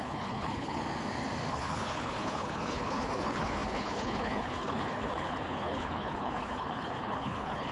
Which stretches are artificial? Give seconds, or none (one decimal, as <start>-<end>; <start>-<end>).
0.0-0.8; 1.5-7.7